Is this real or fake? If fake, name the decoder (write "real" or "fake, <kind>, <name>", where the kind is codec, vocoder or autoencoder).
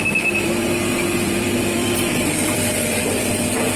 fake, vocoder, BigVGAN v2